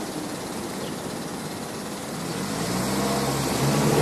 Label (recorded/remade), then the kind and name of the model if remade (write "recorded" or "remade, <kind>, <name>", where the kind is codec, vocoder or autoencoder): recorded